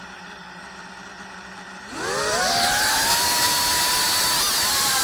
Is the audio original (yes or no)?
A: yes